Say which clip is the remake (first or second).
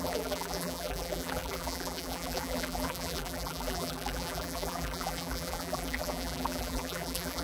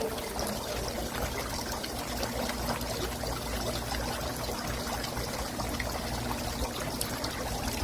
first